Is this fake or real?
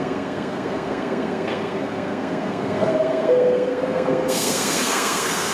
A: fake